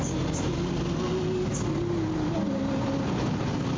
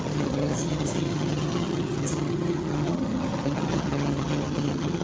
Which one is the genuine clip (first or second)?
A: first